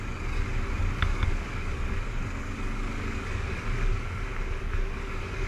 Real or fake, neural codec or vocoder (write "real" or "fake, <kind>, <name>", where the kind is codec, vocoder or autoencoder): fake, codec, DAC